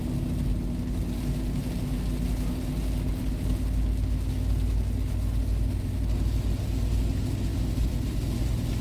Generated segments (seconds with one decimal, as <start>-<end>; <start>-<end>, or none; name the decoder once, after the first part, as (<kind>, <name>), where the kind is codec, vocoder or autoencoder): 7.5-8.8 (vocoder, BigVGAN v2)